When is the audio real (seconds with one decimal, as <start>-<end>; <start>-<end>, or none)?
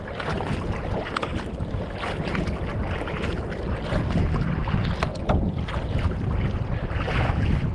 0.0-7.7